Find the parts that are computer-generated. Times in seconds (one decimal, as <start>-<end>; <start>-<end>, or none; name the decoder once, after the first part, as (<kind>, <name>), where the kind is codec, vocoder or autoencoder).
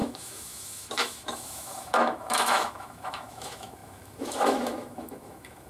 0.0-5.7 (autoencoder, DAC-VAE)